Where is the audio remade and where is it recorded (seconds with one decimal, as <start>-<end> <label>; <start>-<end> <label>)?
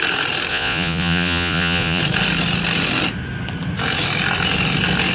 0.0-0.5 recorded; 0.5-2.0 remade; 2.0-5.1 recorded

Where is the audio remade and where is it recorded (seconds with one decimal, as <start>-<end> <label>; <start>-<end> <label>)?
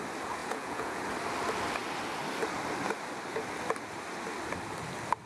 0.0-0.4 recorded; 0.4-1.0 remade; 1.0-5.3 recorded